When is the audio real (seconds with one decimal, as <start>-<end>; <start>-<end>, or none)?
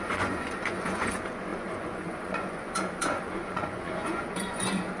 none